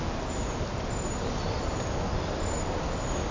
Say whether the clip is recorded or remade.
recorded